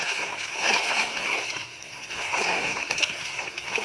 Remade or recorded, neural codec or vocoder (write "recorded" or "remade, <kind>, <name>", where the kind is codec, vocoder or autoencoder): remade, codec, SNAC